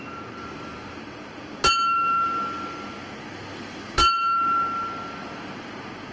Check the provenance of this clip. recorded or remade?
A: recorded